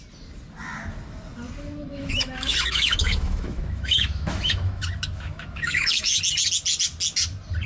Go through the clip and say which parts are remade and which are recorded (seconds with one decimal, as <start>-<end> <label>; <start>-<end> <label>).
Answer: 0.0-1.9 recorded; 1.9-6.2 remade; 6.2-7.7 recorded